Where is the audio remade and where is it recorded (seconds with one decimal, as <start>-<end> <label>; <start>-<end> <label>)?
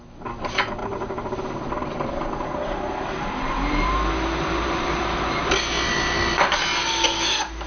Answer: 0.0-0.8 recorded; 0.8-5.4 remade; 5.4-7.7 recorded